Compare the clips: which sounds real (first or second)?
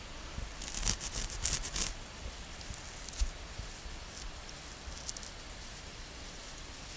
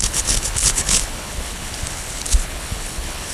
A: first